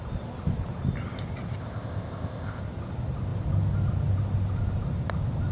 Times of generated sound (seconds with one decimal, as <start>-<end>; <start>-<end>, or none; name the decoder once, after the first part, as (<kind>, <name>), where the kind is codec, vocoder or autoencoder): 1.6-2.6 (codec, ZipCodec)